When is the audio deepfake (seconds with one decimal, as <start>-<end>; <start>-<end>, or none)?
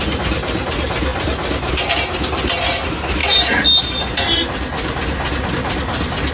none